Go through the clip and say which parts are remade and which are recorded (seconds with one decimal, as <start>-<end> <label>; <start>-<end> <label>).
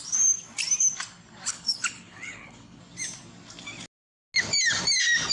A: 0.0-1.5 recorded; 1.5-2.8 remade; 2.8-5.3 recorded